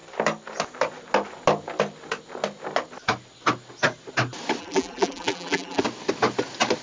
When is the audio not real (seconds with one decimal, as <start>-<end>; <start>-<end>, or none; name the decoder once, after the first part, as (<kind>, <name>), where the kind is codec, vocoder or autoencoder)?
4.6-5.8 (vocoder, BigVGAN v2)